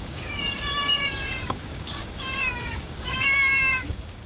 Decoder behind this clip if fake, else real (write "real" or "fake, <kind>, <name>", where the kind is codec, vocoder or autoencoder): fake, codec, DAC